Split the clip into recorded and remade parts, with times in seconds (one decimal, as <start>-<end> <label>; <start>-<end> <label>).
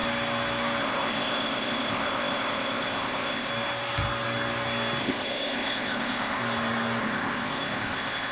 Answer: 0.0-0.8 recorded; 0.8-3.5 remade; 3.5-5.0 recorded; 5.0-6.4 remade; 6.4-7.0 recorded; 7.0-8.3 remade